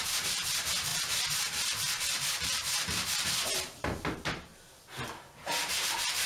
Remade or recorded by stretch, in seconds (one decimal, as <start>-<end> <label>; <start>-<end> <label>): 0.0-4.5 remade; 4.5-5.1 recorded; 5.1-6.3 remade